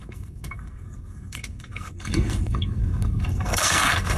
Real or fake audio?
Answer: fake